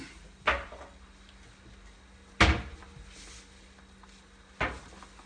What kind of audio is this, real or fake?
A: real